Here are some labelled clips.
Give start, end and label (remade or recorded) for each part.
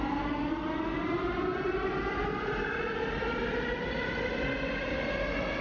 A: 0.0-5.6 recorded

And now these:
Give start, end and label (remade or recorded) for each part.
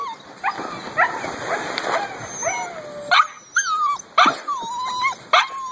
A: 0.0-5.7 recorded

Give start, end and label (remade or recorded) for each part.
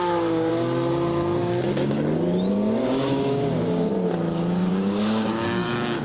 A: 0.0-0.5 remade; 0.5-2.5 recorded; 2.5-3.9 remade; 3.9-4.7 recorded; 4.7-6.0 remade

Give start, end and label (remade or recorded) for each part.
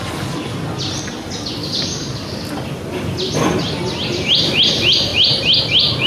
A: 0.0-1.6 recorded; 1.6-2.4 remade; 2.4-6.1 recorded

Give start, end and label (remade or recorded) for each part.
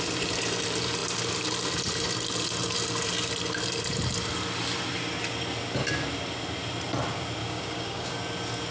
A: 0.0-7.4 recorded; 7.4-8.1 remade; 8.1-8.7 recorded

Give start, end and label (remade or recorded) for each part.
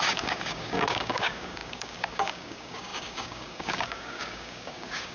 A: 0.0-5.1 remade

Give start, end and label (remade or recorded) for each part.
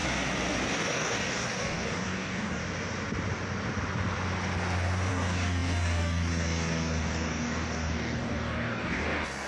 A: 0.0-0.7 recorded; 0.7-2.6 remade; 2.6-5.1 recorded; 5.1-9.5 remade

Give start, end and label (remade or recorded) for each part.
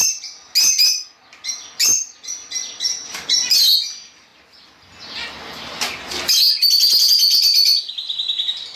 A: 0.0-8.8 recorded